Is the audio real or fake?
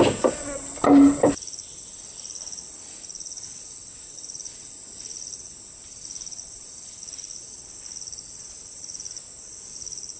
real